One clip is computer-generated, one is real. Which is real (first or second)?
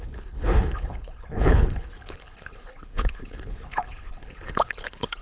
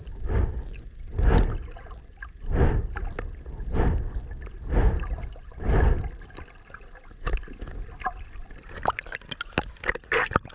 second